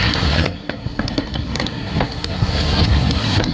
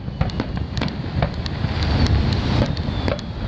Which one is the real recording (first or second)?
second